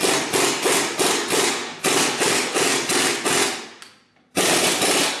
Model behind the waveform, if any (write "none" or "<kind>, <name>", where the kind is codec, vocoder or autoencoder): none